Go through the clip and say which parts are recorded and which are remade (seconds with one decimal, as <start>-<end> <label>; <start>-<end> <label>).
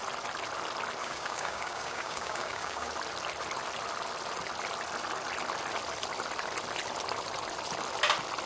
0.0-1.0 recorded; 1.0-2.9 remade; 2.9-8.5 recorded